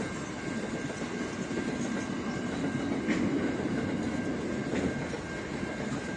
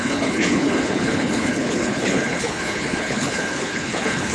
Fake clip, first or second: second